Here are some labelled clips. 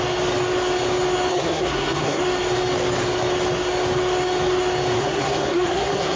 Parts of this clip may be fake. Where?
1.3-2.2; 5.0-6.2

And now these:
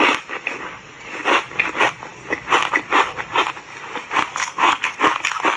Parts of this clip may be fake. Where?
4.3-4.9

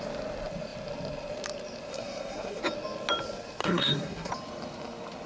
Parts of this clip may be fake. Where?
1.9-2.6; 3.6-4.3

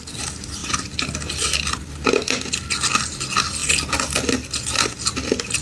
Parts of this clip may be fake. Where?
none

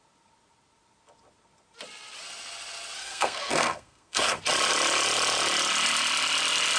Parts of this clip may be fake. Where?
3.0-4.4

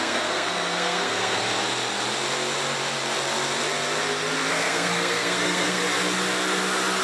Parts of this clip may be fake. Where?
0.0-1.4; 4.5-5.8

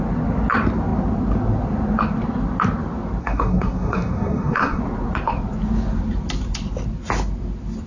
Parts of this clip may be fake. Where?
3.2-4.8

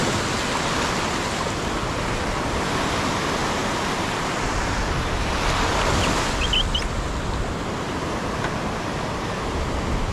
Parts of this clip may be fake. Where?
none